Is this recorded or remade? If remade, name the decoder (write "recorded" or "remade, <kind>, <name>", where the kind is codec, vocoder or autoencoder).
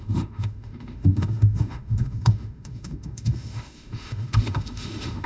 remade, autoencoder, DAC-VAE